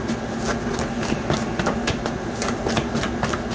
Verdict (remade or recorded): recorded